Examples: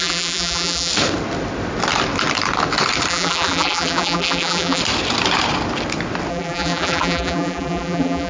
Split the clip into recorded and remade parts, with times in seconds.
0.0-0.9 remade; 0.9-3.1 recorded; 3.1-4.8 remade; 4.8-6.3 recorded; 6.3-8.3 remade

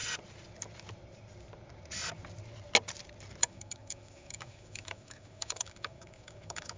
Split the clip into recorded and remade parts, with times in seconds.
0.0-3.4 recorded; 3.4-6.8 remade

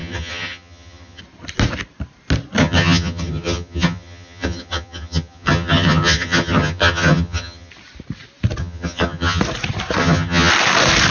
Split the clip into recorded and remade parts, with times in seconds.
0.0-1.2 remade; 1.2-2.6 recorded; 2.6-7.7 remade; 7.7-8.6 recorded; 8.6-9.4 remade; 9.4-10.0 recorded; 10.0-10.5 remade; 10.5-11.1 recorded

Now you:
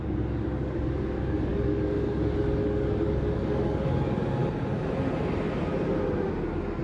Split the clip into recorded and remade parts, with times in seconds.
0.0-4.4 remade; 4.4-6.8 recorded

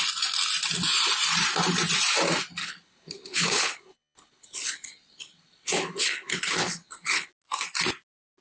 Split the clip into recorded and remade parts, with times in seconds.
0.0-2.6 recorded; 2.6-7.3 remade; 7.3-8.4 recorded

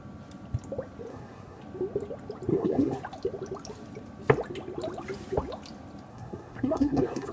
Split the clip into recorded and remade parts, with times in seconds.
0.0-1.1 recorded; 1.1-1.6 remade; 1.6-2.5 recorded; 2.5-3.0 remade; 3.0-6.1 recorded; 6.1-7.3 remade

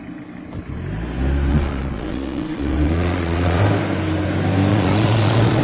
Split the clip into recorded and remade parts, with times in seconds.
0.0-1.5 recorded; 1.5-3.6 remade; 3.6-4.7 recorded; 4.7-5.6 remade